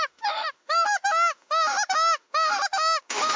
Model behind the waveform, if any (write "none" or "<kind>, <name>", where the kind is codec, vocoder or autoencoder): autoencoder, DAC-VAE